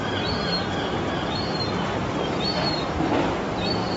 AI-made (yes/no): no